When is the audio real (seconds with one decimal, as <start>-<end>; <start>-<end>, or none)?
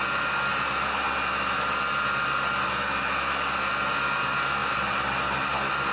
0.0-5.9